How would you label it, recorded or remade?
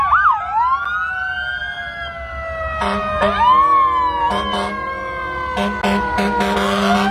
recorded